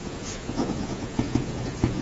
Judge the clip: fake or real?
fake